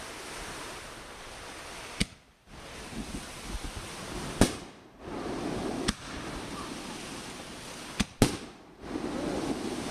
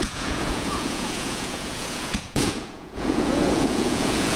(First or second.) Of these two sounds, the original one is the first